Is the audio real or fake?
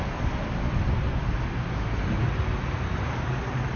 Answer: real